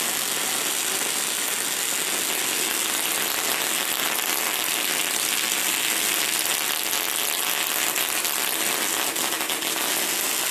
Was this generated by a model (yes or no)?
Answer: no